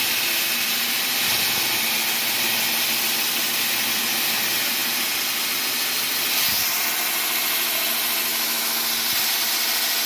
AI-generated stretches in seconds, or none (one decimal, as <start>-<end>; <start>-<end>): 8.3-8.8